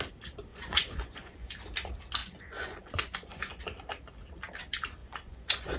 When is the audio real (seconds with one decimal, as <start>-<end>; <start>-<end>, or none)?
0.0-0.5; 1.5-2.2; 3.6-5.0